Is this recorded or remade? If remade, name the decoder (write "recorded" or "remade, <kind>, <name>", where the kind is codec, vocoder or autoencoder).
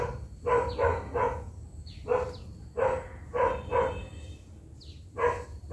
recorded